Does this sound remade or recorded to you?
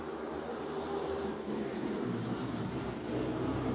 remade